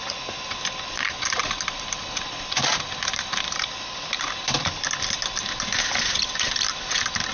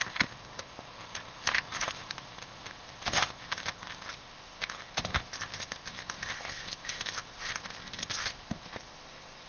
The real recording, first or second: first